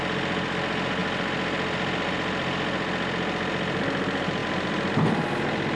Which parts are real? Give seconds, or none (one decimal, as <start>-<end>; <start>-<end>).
0.0-5.8